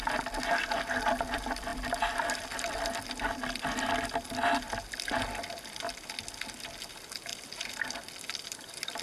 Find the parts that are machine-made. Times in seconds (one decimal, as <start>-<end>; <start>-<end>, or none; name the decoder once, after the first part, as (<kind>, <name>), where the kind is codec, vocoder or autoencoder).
none